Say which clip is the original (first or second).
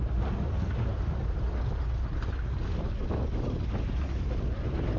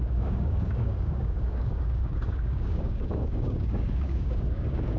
first